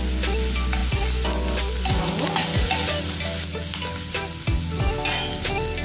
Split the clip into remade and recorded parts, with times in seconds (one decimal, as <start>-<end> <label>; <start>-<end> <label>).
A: 0.0-5.8 recorded